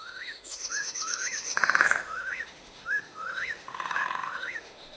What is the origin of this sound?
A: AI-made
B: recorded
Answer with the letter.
A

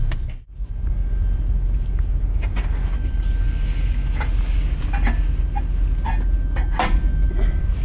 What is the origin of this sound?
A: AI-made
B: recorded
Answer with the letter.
B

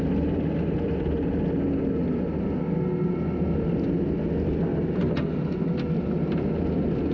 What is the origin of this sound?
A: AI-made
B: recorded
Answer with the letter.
B